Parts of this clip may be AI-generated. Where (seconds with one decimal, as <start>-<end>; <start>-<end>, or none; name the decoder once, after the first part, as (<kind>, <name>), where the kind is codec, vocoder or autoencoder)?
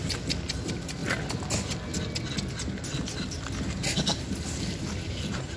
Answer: none